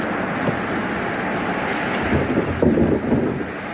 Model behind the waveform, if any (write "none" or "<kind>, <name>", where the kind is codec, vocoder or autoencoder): none